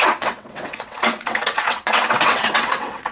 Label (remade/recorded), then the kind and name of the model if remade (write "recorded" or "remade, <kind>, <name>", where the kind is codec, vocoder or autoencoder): remade, vocoder, WaveNeXt